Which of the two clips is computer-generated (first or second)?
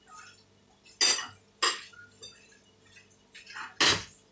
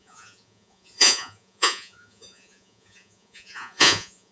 second